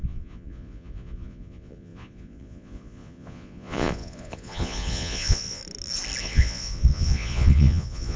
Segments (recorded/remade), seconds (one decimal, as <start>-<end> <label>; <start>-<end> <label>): 0.0-5.6 remade; 5.6-6.2 recorded; 6.2-8.2 remade